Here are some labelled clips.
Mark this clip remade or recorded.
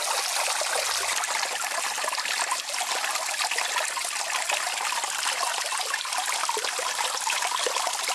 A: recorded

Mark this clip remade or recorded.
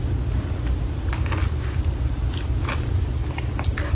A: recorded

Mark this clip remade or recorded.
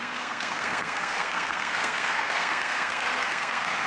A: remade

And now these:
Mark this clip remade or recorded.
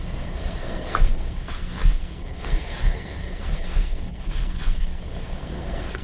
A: remade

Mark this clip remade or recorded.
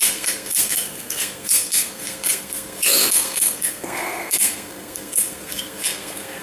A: remade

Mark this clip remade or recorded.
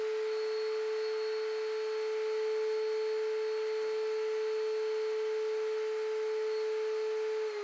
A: recorded